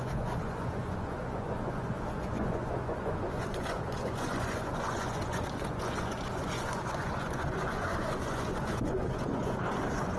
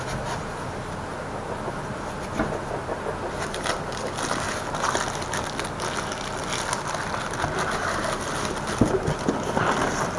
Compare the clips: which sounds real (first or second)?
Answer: second